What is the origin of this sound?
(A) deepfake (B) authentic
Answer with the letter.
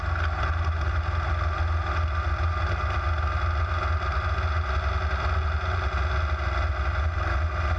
B